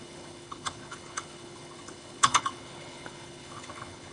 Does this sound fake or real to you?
fake